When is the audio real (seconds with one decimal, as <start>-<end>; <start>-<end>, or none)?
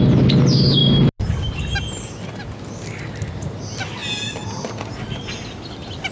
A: 0.0-6.1